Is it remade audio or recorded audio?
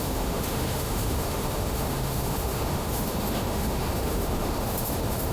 remade